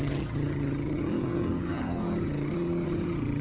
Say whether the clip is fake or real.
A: fake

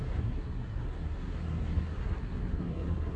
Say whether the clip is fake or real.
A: fake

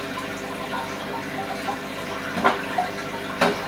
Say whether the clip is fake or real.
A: real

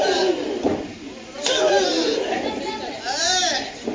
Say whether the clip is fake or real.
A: fake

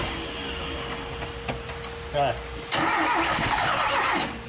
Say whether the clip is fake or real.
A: real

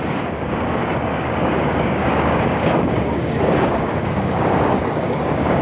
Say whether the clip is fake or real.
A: fake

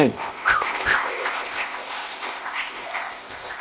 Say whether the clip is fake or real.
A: fake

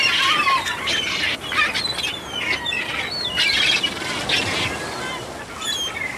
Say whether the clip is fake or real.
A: real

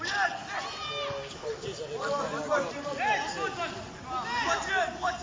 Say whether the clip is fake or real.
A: real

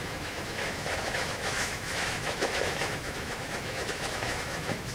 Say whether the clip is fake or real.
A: fake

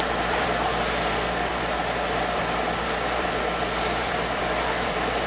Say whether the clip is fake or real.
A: fake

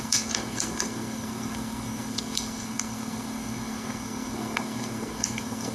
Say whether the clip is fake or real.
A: fake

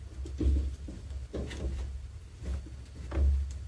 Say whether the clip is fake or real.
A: real